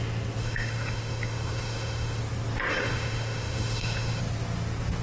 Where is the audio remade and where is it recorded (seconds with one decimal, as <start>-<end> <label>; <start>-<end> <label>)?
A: 0.0-0.4 recorded; 0.4-2.2 remade; 2.2-2.7 recorded; 2.7-4.2 remade; 4.2-5.0 recorded